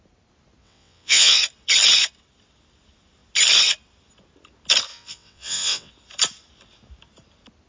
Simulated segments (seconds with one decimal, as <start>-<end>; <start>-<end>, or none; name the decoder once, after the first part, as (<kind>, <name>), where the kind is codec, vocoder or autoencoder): 0.6-1.4 (vocoder, WaveNeXt); 4.9-5.9